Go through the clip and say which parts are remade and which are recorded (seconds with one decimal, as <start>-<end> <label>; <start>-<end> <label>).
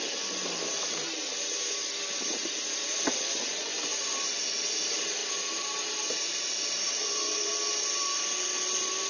0.0-3.4 recorded; 3.4-4.4 remade; 4.4-7.0 recorded; 7.0-7.5 remade; 7.5-9.1 recorded